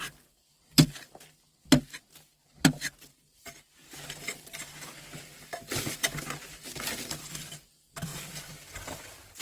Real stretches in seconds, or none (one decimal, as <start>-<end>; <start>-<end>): none

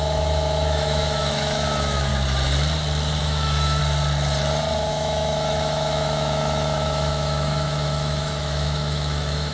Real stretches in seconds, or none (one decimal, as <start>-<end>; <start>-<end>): 2.1-3.2; 3.8-4.9

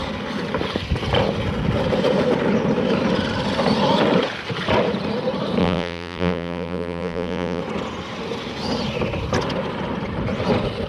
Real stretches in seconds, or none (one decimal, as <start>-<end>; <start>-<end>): 0.0-5.6; 7.6-10.9

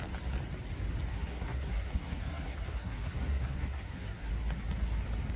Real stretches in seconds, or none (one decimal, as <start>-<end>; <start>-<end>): 0.0-1.1; 4.3-5.4

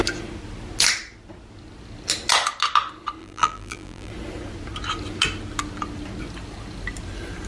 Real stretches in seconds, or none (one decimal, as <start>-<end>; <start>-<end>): 0.0-3.2; 4.1-7.5

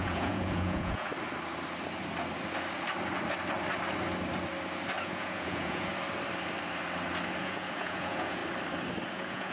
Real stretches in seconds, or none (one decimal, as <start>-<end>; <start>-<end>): 1.1-5.0; 5.9-7.4; 8.4-9.1

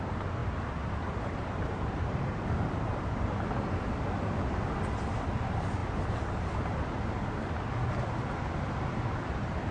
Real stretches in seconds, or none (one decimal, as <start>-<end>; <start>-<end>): 0.0-0.4; 3.0-9.7

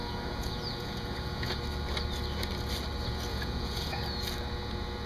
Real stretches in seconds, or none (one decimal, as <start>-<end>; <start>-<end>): 1.6-3.3; 3.9-5.1